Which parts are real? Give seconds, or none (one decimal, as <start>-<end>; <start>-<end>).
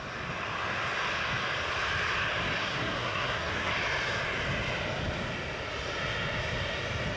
0.0-2.6; 3.7-7.2